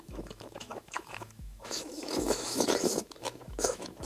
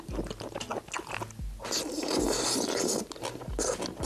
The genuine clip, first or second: second